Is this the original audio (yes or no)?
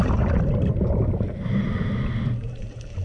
yes